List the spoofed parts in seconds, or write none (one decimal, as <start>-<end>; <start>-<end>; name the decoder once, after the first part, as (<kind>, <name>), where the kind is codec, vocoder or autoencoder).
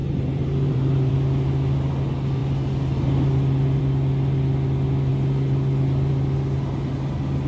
0.0-1.1 (vocoder, BigVGAN v2)